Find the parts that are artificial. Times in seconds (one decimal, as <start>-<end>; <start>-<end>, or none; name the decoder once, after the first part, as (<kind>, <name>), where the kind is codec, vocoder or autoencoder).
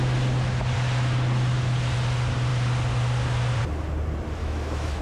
4.4-5.0 (autoencoder, DAC-VAE)